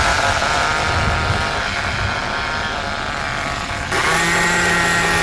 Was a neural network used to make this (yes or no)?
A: no